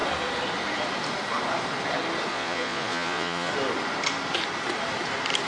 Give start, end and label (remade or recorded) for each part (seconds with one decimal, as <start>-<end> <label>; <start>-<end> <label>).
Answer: 0.0-2.3 recorded; 2.3-3.5 remade; 3.5-5.5 recorded